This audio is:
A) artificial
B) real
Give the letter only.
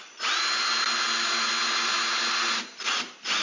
B